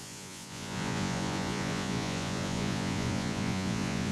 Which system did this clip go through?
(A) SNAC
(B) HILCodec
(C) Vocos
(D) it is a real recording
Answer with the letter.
C